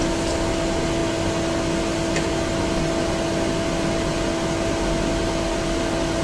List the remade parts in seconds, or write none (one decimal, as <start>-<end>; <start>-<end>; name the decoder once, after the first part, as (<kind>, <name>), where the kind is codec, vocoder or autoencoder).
none